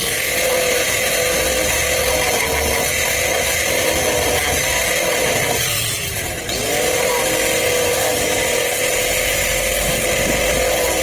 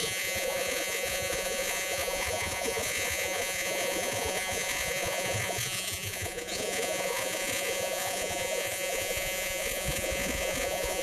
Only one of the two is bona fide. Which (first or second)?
first